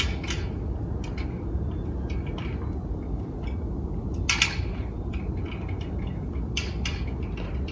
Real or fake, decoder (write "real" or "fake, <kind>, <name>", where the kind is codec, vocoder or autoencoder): real